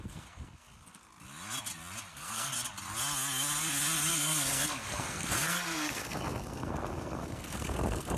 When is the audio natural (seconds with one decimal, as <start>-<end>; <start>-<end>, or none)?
1.1-2.1; 2.5-4.1